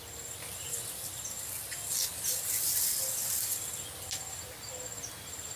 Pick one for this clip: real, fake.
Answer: real